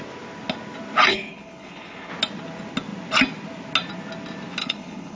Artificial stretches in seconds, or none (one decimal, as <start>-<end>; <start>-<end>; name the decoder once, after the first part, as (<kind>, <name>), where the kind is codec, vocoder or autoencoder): 1.1-2.1 (codec, HILCodec); 4.6-5.2